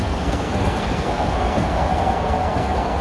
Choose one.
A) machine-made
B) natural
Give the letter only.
A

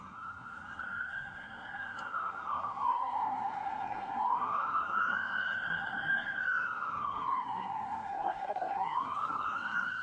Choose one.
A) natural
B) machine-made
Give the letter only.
B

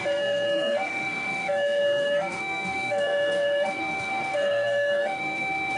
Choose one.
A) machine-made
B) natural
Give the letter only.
A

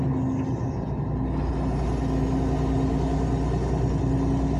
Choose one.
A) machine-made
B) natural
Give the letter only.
B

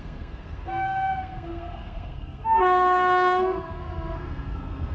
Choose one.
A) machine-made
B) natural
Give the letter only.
A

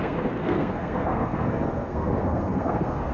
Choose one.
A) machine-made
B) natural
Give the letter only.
A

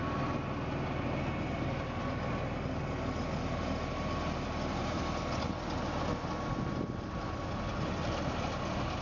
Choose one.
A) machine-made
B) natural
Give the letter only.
B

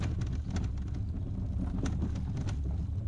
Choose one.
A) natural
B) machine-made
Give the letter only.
A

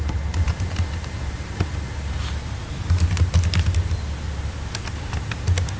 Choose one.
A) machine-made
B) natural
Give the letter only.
B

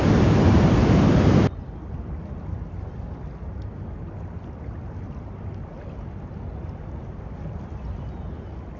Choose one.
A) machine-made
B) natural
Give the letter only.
B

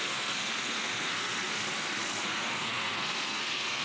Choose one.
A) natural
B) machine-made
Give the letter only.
B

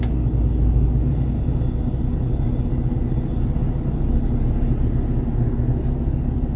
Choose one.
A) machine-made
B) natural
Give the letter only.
B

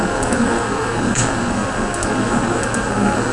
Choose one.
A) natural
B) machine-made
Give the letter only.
B